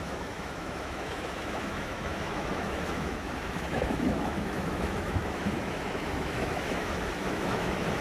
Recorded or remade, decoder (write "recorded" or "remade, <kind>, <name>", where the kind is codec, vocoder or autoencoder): remade, autoencoder, DAC-VAE